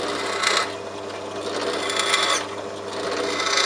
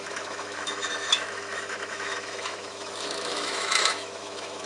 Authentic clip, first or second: first